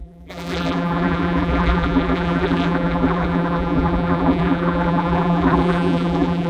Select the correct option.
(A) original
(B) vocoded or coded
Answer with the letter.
B